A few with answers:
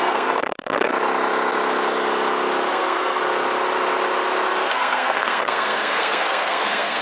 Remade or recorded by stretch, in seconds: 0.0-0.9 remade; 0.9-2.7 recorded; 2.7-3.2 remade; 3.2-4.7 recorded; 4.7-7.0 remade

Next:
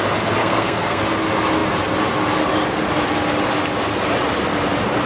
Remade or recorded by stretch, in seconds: 0.0-0.4 recorded; 0.4-1.0 remade; 1.0-5.1 recorded

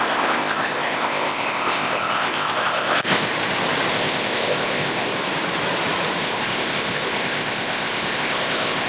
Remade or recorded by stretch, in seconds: 0.0-3.3 remade; 3.3-3.9 recorded; 3.9-5.1 remade; 5.1-6.2 recorded; 6.2-8.9 remade

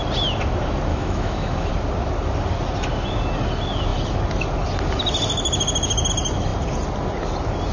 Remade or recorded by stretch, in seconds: 0.0-0.9 recorded; 0.9-1.7 remade; 1.7-7.7 recorded

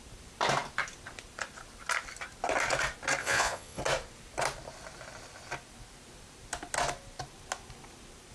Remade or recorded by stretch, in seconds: 0.0-3.2 recorded; 3.2-3.8 remade; 3.8-8.3 recorded

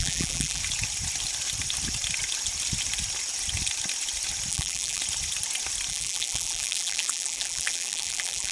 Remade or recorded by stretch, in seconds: 0.0-0.6 remade; 0.6-4.5 recorded; 4.5-5.0 remade; 5.0-5.9 recorded; 5.9-8.5 remade